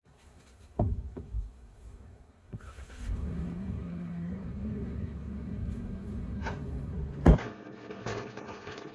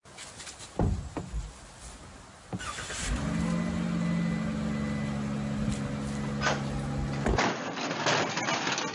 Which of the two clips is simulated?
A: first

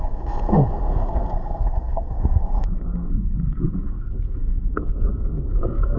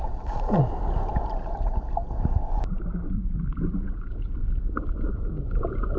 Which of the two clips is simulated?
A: first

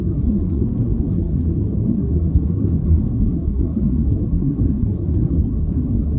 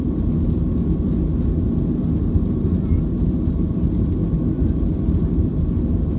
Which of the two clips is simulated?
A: first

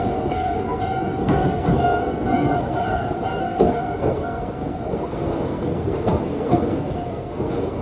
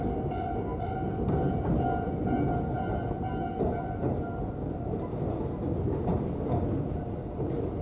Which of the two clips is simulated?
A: first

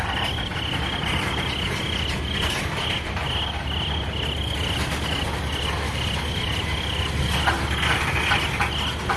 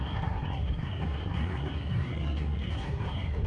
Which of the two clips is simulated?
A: second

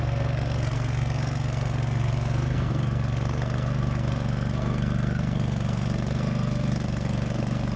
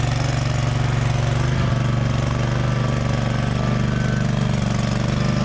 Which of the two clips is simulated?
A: first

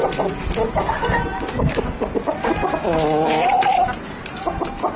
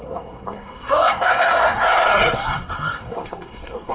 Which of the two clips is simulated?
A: second